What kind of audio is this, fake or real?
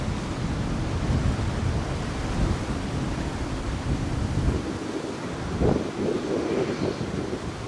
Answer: real